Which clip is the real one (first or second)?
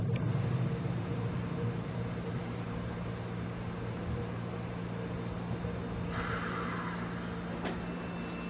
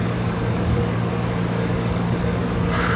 first